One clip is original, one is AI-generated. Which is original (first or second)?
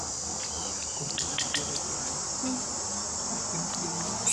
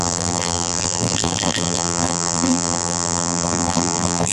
first